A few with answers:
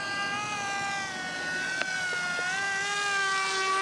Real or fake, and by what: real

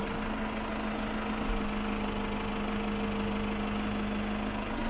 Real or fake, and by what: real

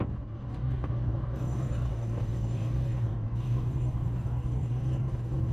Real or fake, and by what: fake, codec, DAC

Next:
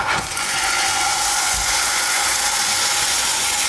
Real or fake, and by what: fake, vocoder, Vocos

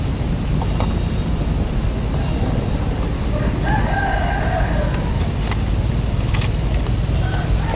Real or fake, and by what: real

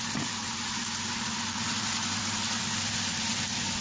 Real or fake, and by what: real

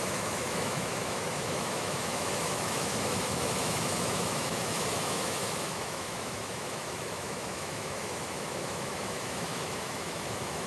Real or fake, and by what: fake, autoencoder, DAC-VAE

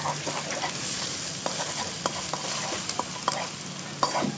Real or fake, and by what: real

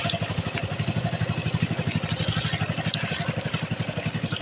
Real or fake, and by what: real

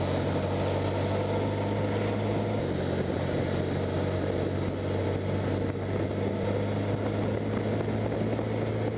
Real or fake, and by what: real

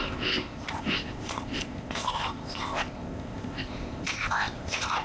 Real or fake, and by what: fake, codec, ZipCodec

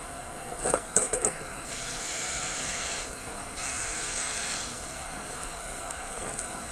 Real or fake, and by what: fake, codec, SNAC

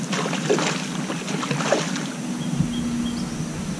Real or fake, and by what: real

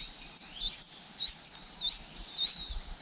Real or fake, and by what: fake, vocoder, BigVGAN v2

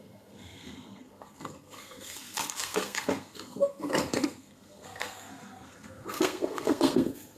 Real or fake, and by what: fake, codec, SNAC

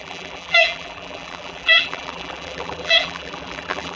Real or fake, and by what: fake, vocoder, BigVGAN v2